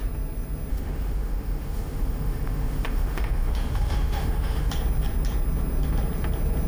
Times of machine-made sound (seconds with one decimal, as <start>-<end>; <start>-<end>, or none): 0.7-4.7